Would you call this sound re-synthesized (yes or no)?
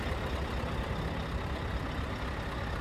no